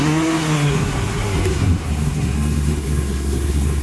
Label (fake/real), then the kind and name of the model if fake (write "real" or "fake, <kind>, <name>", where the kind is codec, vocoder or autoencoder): fake, codec, SNAC